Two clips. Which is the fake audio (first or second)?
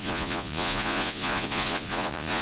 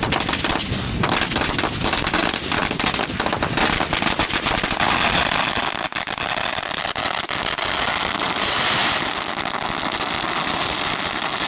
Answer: first